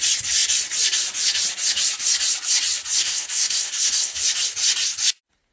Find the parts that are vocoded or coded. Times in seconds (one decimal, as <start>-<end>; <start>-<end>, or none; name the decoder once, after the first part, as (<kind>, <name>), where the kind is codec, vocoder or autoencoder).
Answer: 3.0-4.2 (codec, SNAC)

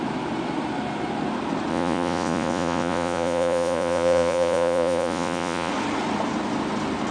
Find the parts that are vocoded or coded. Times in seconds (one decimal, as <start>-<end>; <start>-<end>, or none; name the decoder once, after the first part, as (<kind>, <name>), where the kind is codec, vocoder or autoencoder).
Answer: 1.7-5.7 (vocoder, Vocos)

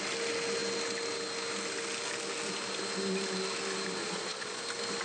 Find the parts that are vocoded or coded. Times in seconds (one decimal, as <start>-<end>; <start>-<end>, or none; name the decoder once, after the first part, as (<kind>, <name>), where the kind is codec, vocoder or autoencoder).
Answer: 4.0-4.6 (vocoder, Vocos)

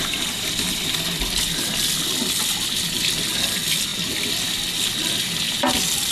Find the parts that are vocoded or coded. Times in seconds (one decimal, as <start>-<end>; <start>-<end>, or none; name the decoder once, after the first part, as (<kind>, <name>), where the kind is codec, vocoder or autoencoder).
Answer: none

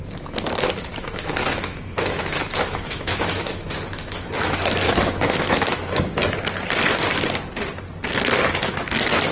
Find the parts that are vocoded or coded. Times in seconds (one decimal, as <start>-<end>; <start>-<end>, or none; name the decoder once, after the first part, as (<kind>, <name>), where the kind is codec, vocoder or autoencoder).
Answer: 1.0-6.1 (autoencoder, DAC-VAE)